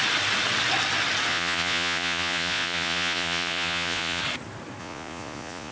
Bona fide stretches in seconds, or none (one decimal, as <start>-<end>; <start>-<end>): 0.0-1.3; 4.2-4.8